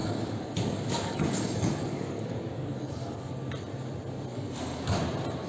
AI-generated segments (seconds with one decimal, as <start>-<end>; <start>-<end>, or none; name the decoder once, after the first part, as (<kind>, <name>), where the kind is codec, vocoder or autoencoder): 0.0-3.3 (codec, DAC); 4.3-5.0